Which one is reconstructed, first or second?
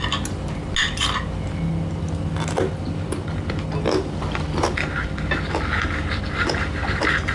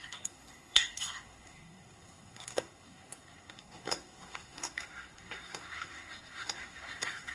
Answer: second